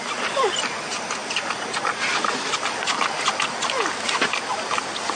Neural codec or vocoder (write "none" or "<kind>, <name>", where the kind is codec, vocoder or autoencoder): none